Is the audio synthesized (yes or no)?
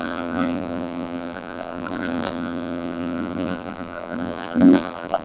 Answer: yes